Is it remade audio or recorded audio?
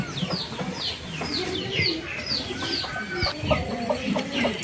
remade